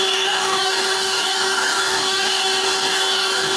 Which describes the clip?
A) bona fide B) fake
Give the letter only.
B